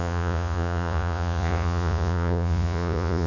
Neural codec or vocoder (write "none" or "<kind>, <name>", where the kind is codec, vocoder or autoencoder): vocoder, Vocos